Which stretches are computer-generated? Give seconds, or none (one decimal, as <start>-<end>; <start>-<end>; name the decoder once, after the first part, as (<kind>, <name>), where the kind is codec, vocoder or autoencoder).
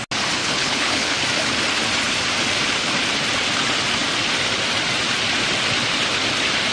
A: 0.4-1.2 (codec, HILCodec)